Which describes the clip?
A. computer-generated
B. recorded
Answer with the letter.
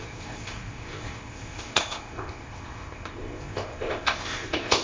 A